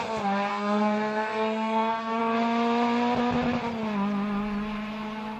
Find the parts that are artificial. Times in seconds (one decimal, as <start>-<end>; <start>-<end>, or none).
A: 0.5-2.2